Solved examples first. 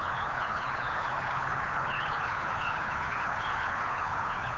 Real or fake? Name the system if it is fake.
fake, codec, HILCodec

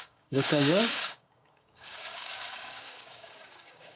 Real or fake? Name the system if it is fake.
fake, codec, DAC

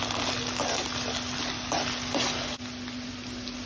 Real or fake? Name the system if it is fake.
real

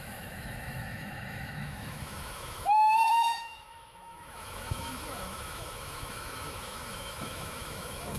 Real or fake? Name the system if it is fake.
fake, autoencoder, DAC-VAE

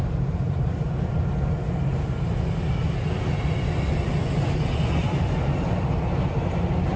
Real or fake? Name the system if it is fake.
real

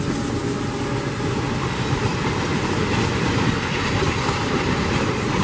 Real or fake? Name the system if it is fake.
real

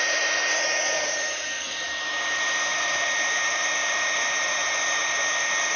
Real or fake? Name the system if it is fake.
fake, vocoder, BigVGAN v2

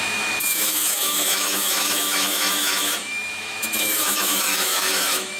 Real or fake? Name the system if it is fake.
fake, autoencoder, DAC-VAE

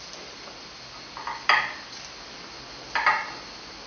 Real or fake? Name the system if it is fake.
real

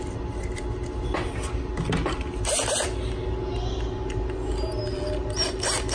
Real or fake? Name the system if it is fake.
real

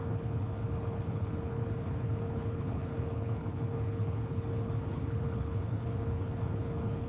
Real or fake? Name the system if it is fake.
fake, codec, HILCodec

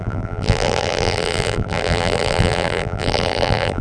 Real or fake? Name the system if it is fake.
fake, vocoder, BigVGAN v2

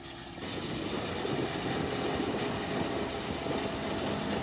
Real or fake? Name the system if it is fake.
real